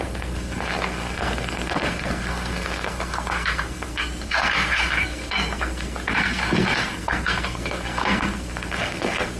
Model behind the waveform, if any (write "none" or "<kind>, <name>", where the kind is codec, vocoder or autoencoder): codec, SNAC